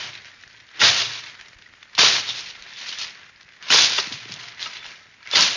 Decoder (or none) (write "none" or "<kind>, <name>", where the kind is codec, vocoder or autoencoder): none